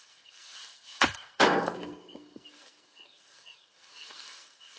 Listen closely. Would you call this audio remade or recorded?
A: remade